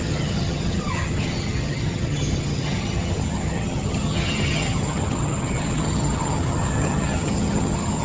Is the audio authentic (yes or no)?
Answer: no